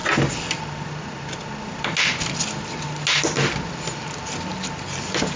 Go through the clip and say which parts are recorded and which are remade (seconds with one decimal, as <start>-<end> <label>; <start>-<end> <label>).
0.0-5.4 recorded